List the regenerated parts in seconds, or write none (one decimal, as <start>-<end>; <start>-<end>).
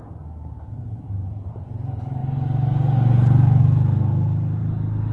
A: none